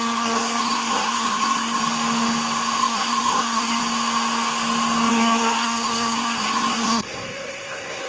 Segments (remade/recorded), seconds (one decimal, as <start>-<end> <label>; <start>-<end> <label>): 0.0-1.8 remade; 1.8-2.8 recorded; 2.8-3.8 remade; 3.8-5.1 recorded; 5.1-8.1 remade